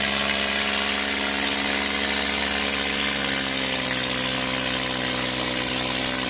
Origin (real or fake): real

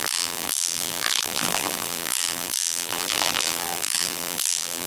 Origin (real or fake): fake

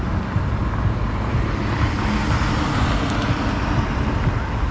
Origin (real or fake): real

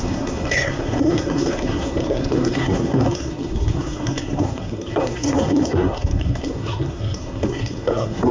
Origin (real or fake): fake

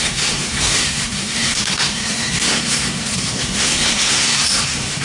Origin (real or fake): fake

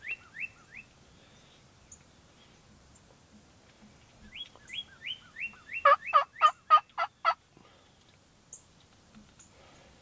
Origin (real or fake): real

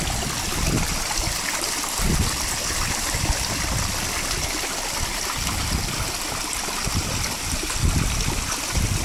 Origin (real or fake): real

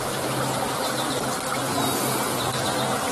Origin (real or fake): real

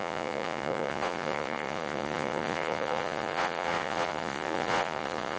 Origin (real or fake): fake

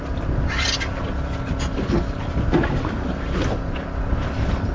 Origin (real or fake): real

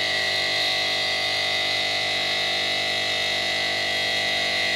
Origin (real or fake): fake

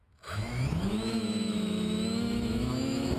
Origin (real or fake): fake